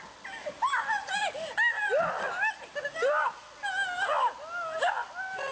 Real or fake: real